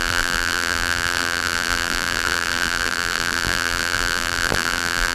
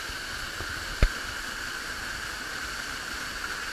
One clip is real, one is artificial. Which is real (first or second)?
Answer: second